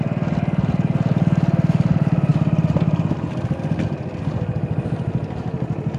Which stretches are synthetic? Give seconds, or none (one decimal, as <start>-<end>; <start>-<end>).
none